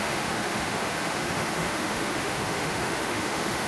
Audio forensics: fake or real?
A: fake